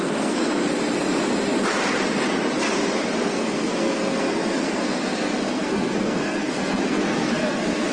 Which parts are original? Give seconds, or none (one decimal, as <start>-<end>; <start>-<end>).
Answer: 0.6-3.3